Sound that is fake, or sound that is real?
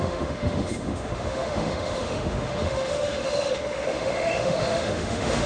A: fake